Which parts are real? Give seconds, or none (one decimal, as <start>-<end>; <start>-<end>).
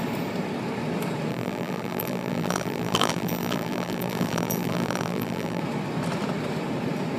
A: 0.0-1.3; 5.6-7.2